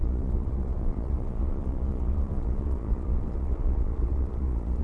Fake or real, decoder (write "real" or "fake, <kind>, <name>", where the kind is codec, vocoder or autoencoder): fake, vocoder, Vocos